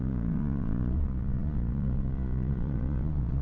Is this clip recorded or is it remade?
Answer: remade